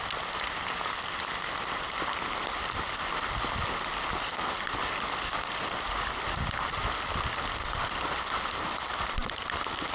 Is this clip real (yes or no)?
yes